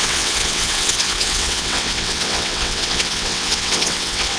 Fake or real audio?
fake